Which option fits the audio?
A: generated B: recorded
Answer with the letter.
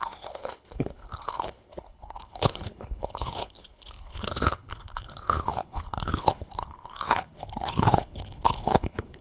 A